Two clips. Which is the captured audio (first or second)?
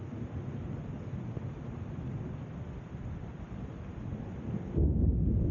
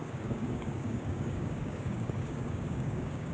first